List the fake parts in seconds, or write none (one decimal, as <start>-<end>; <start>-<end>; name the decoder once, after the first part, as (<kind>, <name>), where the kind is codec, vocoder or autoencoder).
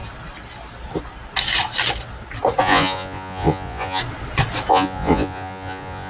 2.6-4.0 (vocoder, Vocos); 4.7-6.1